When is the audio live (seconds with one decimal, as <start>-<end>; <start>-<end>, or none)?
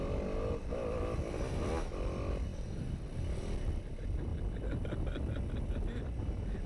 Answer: 0.0-6.7